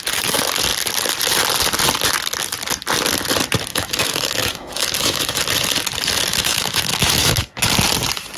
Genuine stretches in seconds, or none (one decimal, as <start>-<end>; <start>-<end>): 0.0-3.7; 5.4-6.3; 7.7-8.4